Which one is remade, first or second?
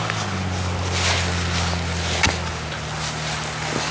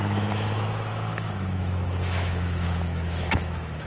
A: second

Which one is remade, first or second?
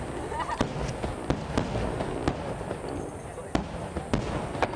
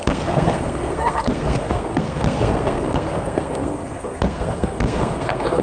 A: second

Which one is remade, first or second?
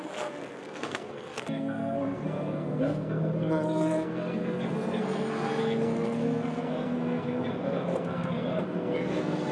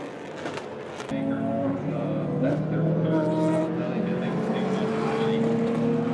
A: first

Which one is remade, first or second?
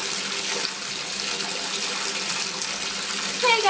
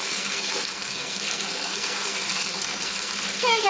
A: second